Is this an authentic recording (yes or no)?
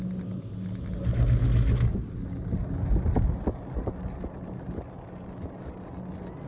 yes